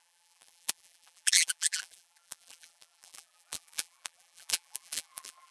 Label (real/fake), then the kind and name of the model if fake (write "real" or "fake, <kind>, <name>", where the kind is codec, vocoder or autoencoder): fake, vocoder, BigVGAN v2